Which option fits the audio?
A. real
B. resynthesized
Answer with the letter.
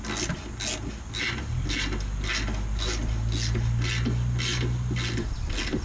A